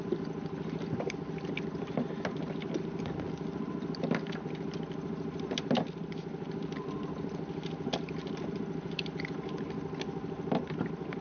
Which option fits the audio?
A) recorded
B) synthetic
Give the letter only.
A